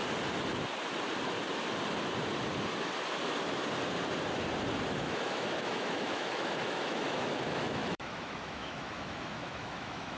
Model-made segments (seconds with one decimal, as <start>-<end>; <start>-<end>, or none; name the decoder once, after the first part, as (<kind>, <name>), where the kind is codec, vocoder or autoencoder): 4.9-10.2 (autoencoder, DAC-VAE)